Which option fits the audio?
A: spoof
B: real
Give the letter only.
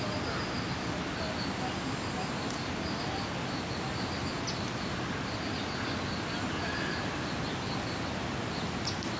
B